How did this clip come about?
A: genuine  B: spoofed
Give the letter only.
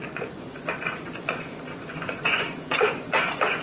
B